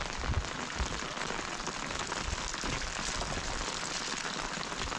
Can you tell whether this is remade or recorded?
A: recorded